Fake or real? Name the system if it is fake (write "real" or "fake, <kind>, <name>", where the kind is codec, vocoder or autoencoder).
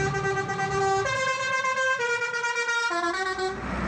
real